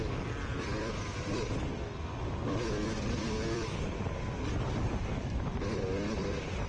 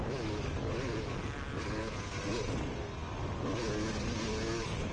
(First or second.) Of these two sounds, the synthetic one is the first